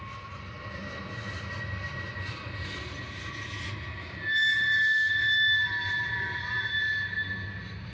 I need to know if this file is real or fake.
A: real